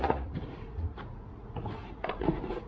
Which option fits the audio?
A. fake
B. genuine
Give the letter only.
A